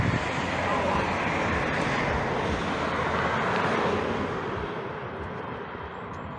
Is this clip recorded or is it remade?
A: recorded